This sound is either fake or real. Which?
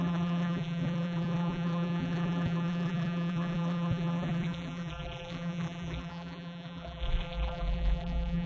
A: fake